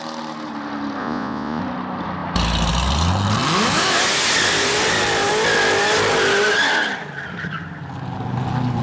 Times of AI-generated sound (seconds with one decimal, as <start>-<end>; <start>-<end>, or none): 1.0-1.6